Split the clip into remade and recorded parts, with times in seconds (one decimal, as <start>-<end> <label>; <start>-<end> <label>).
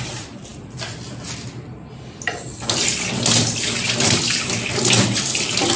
0.0-5.8 recorded